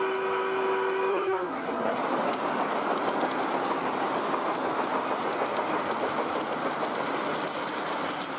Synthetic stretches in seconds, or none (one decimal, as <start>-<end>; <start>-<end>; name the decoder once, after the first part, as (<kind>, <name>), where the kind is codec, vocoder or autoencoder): 1.1-2.0 (codec, SNAC)